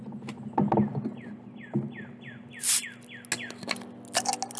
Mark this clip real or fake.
real